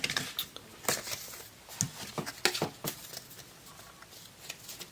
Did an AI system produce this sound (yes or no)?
no